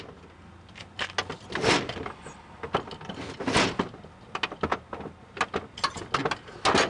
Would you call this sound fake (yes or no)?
no